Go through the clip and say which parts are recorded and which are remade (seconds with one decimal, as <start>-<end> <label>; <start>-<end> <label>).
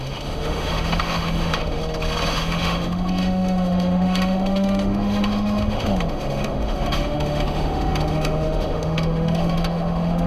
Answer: 0.0-1.8 remade; 1.8-2.3 recorded; 2.3-10.3 remade